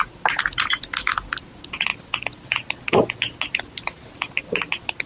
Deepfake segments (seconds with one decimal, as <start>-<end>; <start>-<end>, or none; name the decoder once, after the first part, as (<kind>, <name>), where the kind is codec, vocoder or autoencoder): none